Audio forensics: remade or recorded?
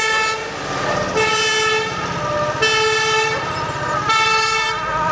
recorded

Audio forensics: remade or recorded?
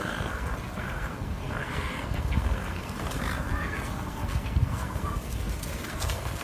remade